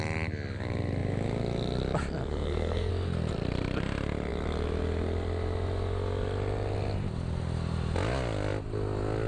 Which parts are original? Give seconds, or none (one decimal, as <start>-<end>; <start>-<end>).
0.0-2.2; 2.9-9.3